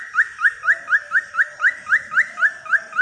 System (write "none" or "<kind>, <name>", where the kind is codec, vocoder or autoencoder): none